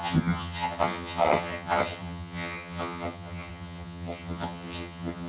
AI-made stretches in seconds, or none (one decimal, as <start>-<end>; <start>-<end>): 0.0-5.3